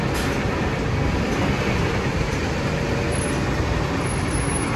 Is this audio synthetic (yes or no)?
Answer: no